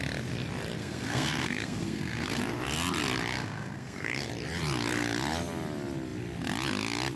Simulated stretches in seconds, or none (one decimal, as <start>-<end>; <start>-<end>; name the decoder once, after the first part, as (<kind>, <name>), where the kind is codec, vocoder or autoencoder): 0.8-2.4 (codec, SNAC); 3.3-4.3